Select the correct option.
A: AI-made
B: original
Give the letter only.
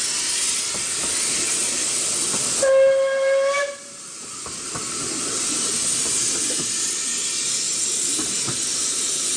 B